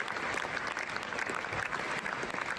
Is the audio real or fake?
real